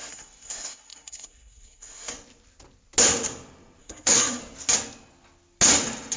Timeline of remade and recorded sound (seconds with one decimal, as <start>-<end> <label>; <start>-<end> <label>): 0.0-2.1 remade; 2.1-3.8 recorded; 3.8-4.4 remade; 4.4-6.2 recorded